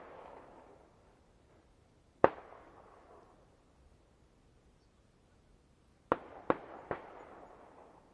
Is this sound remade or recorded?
recorded